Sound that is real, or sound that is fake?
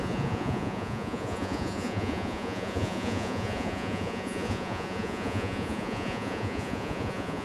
fake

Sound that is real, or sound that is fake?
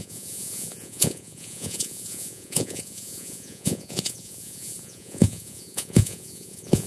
fake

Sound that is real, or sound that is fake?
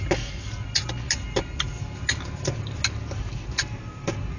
real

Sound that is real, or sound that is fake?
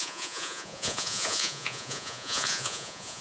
fake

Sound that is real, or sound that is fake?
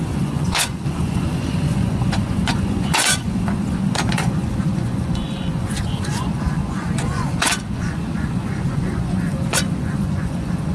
fake